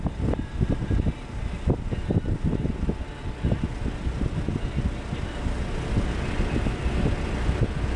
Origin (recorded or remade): recorded